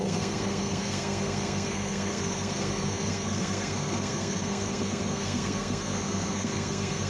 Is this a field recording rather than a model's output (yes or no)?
no